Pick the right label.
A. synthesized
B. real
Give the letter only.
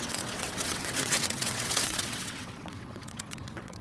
A